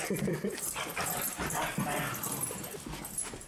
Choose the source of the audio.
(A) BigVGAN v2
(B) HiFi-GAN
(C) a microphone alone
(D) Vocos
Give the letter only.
A